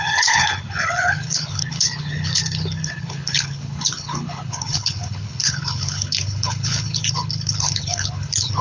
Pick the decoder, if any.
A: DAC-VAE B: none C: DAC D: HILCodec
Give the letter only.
D